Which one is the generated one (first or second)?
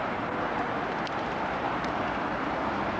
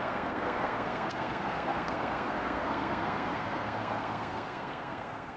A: second